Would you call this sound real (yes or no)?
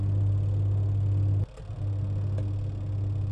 yes